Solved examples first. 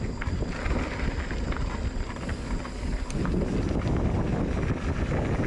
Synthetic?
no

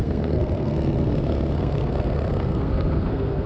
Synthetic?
yes